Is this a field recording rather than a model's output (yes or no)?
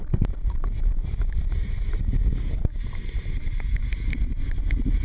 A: yes